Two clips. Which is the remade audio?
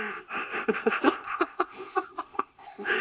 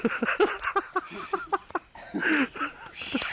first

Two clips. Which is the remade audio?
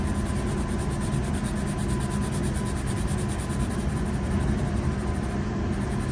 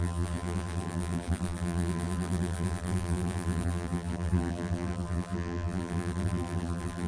second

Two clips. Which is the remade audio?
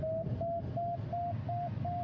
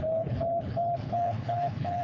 second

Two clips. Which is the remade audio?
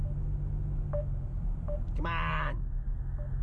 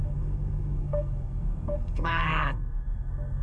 second